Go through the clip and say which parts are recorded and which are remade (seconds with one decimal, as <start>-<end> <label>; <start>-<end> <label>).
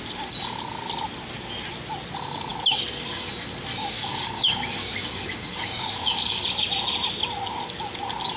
0.0-3.8 recorded; 3.8-6.4 remade; 6.4-8.4 recorded